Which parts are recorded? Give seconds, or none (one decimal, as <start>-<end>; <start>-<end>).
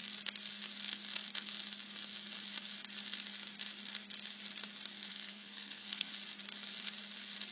0.0-5.1; 6.1-7.5